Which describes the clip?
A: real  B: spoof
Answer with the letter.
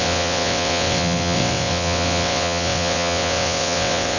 B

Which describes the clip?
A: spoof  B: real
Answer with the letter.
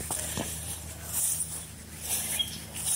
A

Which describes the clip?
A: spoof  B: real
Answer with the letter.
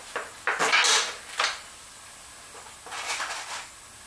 B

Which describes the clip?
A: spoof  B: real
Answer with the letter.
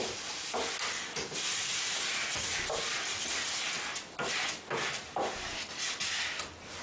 B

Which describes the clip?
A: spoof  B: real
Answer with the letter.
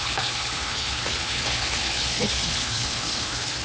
A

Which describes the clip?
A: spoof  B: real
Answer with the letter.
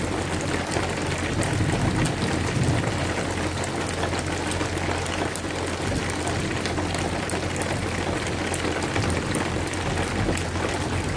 B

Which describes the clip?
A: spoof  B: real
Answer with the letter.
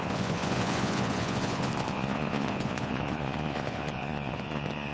A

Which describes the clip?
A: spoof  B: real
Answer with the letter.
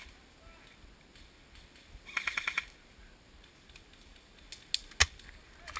B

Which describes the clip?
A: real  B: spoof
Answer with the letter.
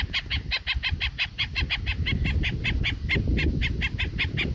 A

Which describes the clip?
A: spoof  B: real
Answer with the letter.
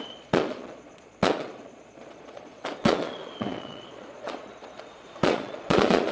A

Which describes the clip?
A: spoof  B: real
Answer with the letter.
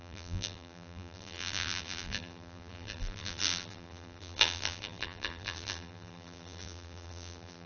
A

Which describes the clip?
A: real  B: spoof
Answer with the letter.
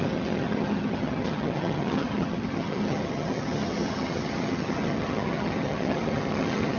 B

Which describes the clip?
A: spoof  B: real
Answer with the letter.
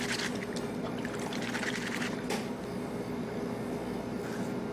B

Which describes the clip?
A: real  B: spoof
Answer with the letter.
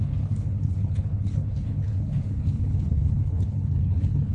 B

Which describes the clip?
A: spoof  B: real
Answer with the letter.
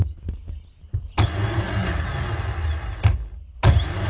B